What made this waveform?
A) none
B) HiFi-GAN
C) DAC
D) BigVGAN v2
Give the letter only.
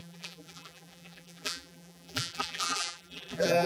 D